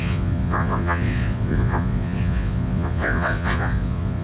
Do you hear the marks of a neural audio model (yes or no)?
yes